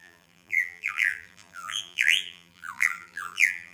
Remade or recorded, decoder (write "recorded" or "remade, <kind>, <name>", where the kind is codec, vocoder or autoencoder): remade, vocoder, BigVGAN v2